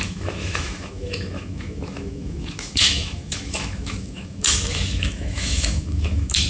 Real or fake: fake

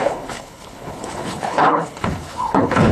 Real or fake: fake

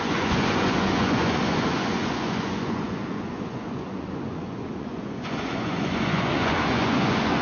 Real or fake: fake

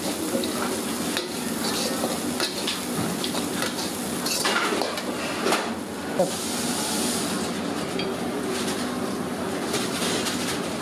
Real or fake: real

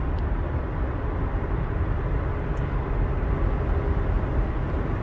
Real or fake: real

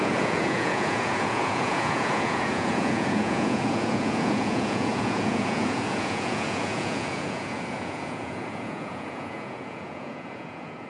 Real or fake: fake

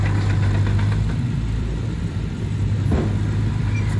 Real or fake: fake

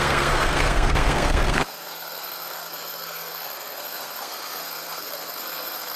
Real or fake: fake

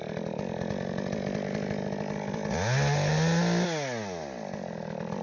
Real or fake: real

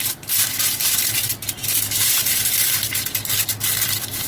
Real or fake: real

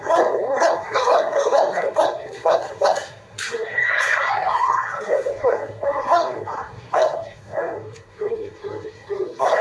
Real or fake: fake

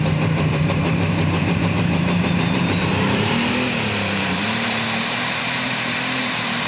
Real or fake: fake